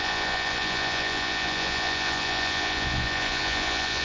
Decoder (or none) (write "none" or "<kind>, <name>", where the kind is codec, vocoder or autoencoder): vocoder, Vocos